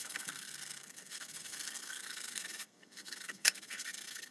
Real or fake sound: fake